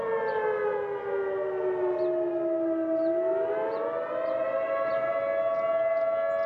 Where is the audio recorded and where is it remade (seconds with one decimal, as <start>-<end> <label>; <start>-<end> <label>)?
0.0-6.5 recorded